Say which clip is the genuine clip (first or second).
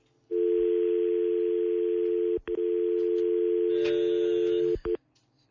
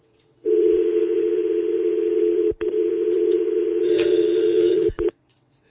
first